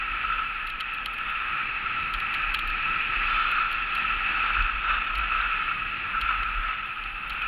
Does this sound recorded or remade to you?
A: recorded